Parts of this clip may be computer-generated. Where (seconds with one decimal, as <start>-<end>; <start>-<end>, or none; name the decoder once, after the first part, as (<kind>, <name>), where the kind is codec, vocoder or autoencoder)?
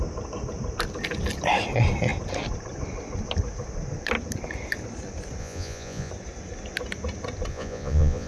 5.4-6.1 (vocoder, Vocos); 7.5-8.3